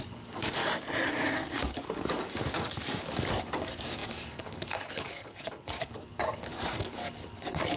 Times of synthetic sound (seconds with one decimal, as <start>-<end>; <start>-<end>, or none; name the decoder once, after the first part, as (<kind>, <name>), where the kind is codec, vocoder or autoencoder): 0.0-0.6 (codec, DAC); 1.1-7.8